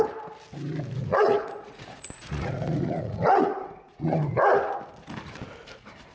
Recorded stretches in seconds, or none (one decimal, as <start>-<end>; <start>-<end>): 0.0-1.0; 4.3-6.1